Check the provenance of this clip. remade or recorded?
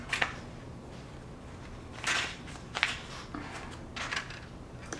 recorded